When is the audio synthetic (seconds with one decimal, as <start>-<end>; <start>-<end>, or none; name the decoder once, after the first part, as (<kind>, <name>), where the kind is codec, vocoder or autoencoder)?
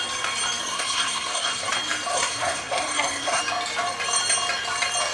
0.6-1.7 (codec, SNAC); 2.1-3.4